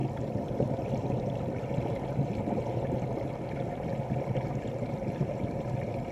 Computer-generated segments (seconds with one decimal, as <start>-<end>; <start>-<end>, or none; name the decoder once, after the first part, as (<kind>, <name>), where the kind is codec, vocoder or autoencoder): 0.0-2.6 (vocoder, BigVGAN v2); 3.9-6.1